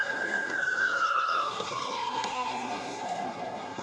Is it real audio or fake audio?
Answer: fake